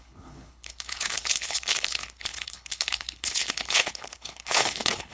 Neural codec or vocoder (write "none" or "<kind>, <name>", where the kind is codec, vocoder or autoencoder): codec, HILCodec